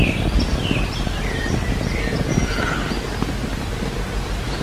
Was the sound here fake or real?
real